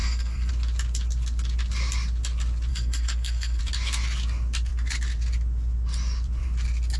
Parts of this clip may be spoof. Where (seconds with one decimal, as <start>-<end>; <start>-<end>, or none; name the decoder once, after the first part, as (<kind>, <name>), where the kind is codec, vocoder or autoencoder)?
0.0-0.5 (codec, SNAC); 2.7-3.6